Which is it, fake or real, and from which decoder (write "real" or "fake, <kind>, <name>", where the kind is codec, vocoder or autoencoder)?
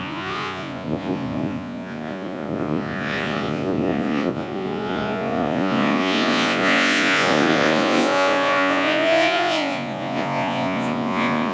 fake, vocoder, Vocos